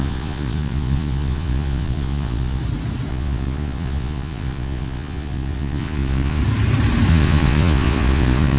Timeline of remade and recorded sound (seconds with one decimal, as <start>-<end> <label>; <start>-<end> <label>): 0.0-2.6 remade; 2.6-3.1 recorded; 3.1-6.4 remade; 6.4-7.1 recorded; 7.1-8.6 remade